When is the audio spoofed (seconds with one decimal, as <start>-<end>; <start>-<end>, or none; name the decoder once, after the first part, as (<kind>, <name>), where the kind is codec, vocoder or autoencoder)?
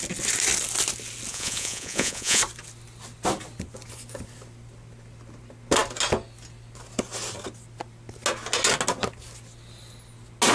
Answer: 1.3-2.4 (vocoder, Vocos)